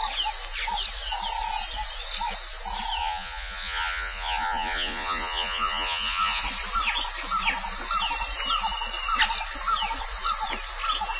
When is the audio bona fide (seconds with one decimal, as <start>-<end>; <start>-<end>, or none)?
0.0-3.0; 6.4-11.2